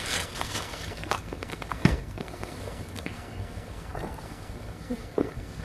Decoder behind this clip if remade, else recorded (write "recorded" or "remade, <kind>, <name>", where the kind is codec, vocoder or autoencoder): remade, codec, SNAC